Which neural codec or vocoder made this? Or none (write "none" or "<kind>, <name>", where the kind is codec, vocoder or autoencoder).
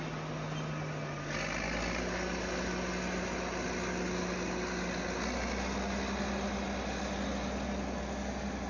none